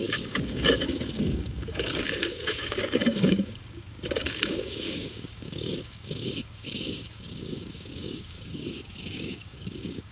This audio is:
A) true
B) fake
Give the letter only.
B